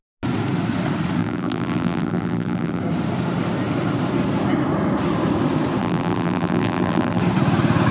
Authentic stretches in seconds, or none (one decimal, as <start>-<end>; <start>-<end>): 0.0-1.2; 2.8-5.8; 7.2-7.9

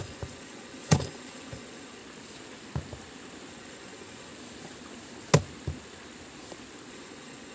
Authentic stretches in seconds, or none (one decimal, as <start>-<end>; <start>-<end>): 2.0-3.5; 4.3-6.9

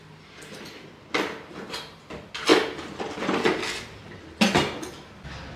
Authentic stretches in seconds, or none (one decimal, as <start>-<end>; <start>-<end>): 0.0-5.6

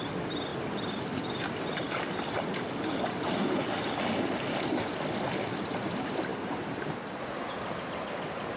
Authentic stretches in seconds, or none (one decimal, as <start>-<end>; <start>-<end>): 0.0-6.3; 7.5-8.6

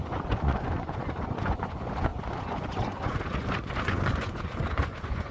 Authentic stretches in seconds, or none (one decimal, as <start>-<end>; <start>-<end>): none

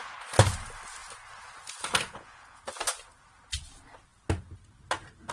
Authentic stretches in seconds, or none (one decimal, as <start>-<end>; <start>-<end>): 0.0-2.1; 2.6-5.3

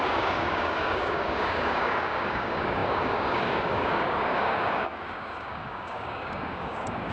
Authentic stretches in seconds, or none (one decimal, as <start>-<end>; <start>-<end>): none